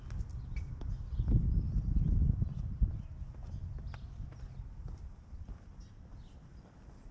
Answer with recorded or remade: recorded